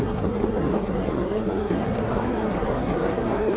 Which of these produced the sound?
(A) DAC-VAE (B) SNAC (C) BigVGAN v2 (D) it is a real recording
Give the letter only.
B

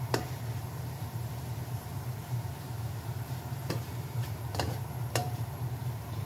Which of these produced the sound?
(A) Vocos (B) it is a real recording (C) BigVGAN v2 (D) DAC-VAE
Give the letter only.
C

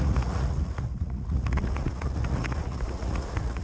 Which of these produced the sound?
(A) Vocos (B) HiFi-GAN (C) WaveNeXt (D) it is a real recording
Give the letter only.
A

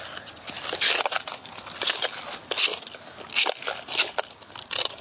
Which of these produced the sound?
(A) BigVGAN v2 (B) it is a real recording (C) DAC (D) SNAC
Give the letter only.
B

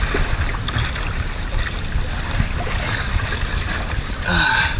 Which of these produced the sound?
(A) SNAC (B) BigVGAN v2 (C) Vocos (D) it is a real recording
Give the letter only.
D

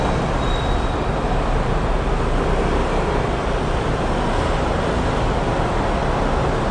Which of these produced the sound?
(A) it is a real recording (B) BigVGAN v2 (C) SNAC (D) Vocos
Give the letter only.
A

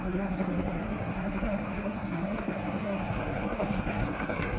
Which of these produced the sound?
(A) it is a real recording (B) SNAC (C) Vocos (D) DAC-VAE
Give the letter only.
B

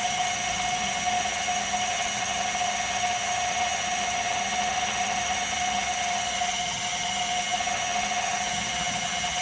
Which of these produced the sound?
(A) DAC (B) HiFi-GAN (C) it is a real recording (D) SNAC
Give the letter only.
B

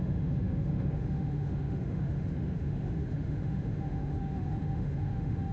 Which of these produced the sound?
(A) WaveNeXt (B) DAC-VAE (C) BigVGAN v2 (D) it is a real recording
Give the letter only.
B